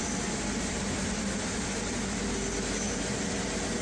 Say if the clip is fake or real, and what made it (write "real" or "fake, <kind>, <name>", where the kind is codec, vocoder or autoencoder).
real